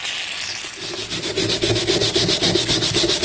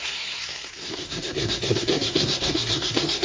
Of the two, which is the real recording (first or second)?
first